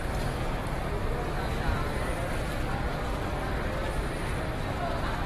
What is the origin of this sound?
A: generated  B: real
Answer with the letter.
B